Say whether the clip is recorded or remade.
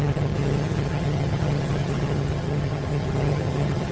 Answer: remade